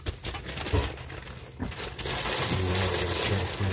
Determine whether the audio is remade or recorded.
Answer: recorded